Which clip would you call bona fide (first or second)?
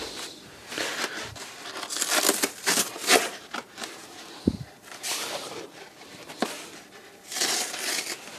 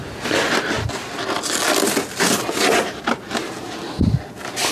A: second